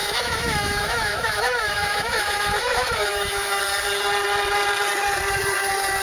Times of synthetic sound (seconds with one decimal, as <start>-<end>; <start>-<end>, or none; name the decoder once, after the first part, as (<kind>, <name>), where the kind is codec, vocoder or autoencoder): 0.0-3.6 (autoencoder, DAC-VAE)